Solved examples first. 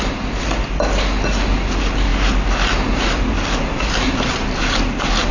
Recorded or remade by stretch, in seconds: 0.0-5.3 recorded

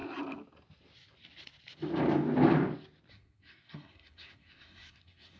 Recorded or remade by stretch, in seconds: 0.0-3.1 recorded; 3.1-5.4 remade